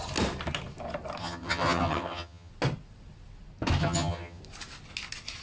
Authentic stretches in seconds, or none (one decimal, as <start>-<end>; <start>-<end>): 0.0-1.2; 2.5-3.8; 4.4-5.4